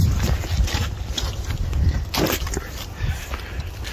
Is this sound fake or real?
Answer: real